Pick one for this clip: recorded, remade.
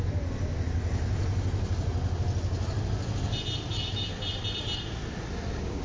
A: recorded